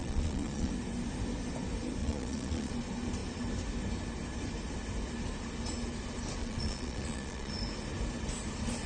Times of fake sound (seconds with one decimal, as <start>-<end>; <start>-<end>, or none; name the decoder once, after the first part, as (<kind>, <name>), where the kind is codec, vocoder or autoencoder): 0.0-0.7 (vocoder, Vocos); 2.0-2.7; 6.4-7.5